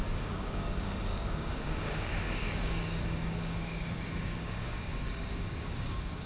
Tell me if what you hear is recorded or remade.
remade